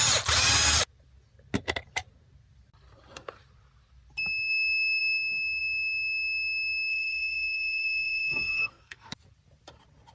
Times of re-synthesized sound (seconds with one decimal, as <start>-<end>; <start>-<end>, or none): 6.9-9.1